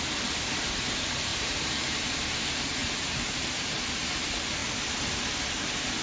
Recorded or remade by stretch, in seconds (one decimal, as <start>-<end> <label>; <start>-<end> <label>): 0.0-1.3 recorded; 1.3-2.2 remade; 2.2-2.8 recorded; 2.8-3.7 remade; 3.7-6.0 recorded